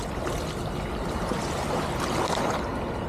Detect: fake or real real